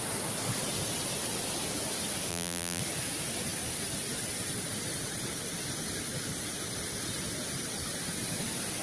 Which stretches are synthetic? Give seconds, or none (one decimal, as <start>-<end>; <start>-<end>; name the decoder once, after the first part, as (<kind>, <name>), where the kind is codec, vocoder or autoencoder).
2.3-2.8 (vocoder, BigVGAN v2)